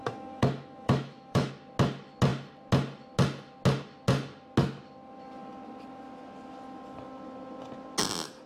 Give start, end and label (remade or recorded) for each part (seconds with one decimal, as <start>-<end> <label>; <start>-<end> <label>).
0.0-1.5 remade; 1.5-8.5 recorded

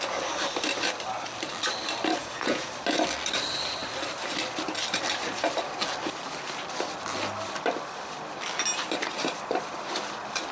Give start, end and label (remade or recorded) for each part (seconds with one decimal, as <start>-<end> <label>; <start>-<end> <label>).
0.0-2.2 recorded; 2.2-2.7 remade; 2.7-10.5 recorded